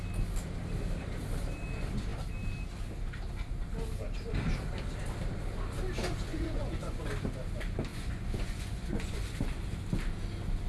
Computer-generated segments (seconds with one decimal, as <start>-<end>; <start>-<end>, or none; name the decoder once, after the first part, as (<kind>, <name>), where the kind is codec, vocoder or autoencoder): 6.3-7.0 (vocoder, Vocos); 7.9-9.3